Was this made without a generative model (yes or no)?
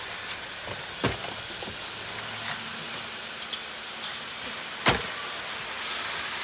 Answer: yes